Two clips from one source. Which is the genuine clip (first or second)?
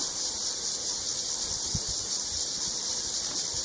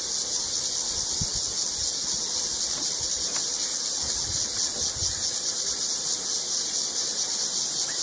second